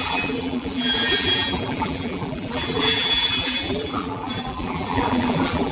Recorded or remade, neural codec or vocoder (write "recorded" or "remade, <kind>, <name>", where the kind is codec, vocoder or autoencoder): remade, vocoder, BigVGAN v2